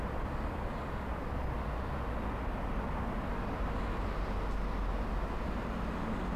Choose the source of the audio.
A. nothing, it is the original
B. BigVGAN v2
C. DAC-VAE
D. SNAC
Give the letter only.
A